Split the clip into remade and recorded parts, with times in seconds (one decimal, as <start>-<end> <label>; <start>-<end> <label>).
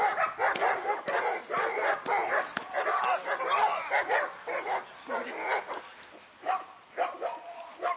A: 0.0-8.0 recorded